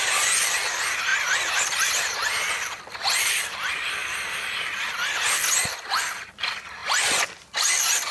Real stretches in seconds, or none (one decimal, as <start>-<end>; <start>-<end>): 0.0-8.1